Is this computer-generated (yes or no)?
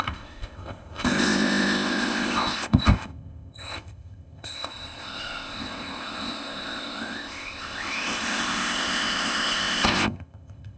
yes